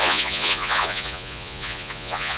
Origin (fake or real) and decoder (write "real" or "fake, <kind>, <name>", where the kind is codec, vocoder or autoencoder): fake, vocoder, Vocos